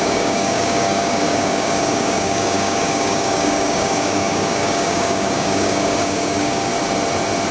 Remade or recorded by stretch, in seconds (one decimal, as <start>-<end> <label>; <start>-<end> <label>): 0.0-6.7 remade; 6.7-7.5 recorded